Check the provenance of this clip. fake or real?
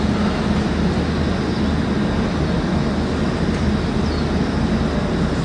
real